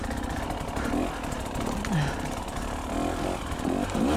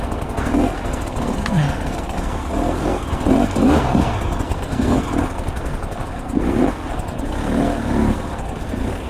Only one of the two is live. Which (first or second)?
first